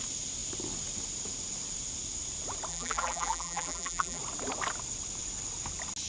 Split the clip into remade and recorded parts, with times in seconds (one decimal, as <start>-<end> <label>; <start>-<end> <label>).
0.0-2.7 recorded; 2.7-4.2 remade; 4.2-6.1 recorded